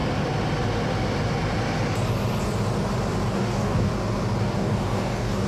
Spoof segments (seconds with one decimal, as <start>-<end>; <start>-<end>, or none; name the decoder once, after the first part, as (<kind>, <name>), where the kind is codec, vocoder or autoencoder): 3.3-3.9 (codec, DAC); 4.4-5.5

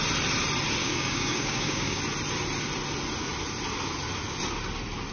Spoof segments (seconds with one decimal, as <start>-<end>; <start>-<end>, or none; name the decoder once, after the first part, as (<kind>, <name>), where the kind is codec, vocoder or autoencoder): 0.8-2.0 (codec, DAC)

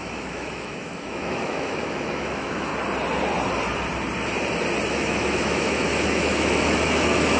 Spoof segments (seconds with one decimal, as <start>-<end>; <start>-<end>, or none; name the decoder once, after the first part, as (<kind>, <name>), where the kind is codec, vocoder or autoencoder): 0.0-2.7 (autoencoder, DAC-VAE); 4.9-7.4

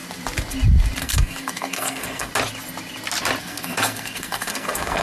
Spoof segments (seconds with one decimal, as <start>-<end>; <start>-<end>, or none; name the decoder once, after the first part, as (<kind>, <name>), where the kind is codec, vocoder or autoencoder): 1.0-2.3 (codec, SNAC); 3.4-5.0

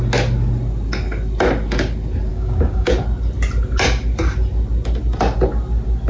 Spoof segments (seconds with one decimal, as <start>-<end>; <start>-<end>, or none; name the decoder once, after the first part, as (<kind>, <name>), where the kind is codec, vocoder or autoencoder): 2.3-2.9 (codec, DAC)

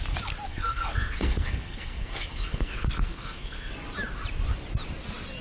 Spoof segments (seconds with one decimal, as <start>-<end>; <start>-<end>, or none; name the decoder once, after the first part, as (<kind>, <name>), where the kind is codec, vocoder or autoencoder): 0.5-3.7 (codec, SNAC)

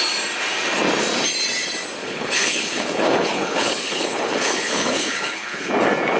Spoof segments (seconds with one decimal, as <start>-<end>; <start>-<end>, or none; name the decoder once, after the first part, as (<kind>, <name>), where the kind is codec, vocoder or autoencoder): 2.0-5.7 (codec, HILCodec)